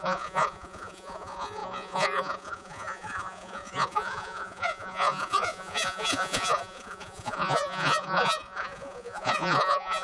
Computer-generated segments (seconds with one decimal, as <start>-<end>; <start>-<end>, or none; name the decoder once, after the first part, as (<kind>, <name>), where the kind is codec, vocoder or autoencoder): 0.0-10.0 (vocoder, Vocos)